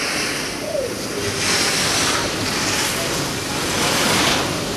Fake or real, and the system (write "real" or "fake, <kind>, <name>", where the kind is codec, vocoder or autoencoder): real